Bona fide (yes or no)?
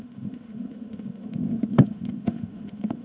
no